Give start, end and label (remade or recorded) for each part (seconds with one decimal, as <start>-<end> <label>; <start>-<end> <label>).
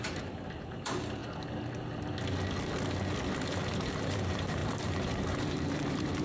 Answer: 0.0-1.2 remade; 1.2-3.3 recorded; 3.3-6.2 remade